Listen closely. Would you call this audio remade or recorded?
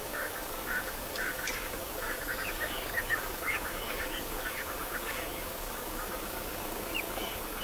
remade